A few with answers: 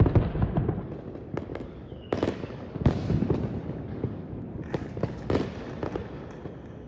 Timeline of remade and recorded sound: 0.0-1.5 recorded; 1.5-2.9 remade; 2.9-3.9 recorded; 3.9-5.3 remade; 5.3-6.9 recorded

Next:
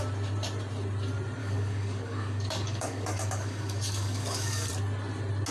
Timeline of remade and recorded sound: 0.0-1.4 recorded; 1.4-4.7 remade; 4.7-5.5 recorded

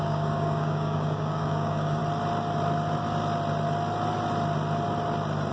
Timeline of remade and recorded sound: 0.0-2.0 remade; 2.0-5.5 recorded

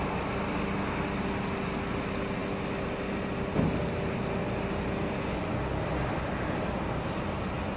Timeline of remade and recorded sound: 0.0-7.8 recorded